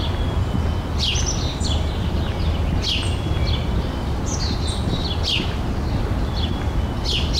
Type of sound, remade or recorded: recorded